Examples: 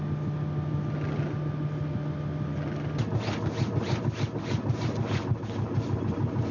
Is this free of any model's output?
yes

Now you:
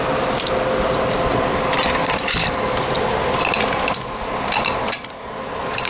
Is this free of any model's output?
yes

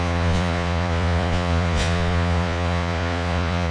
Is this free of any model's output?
no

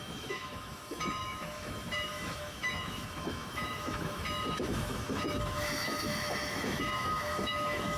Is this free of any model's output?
no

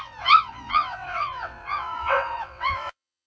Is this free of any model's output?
no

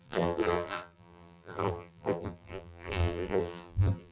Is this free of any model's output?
no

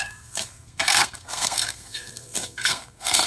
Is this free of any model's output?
no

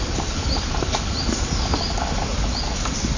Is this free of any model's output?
yes